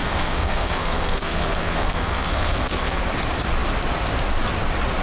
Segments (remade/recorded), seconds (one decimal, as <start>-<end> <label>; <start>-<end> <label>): 0.0-3.0 remade; 3.0-5.0 recorded